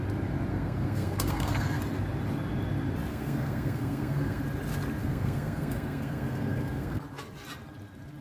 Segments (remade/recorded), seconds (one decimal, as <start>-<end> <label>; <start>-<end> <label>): 0.0-0.5 recorded; 0.5-1.8 remade; 1.8-3.1 recorded; 3.1-4.4 remade; 4.4-5.0 recorded; 5.0-7.0 remade; 7.0-8.2 recorded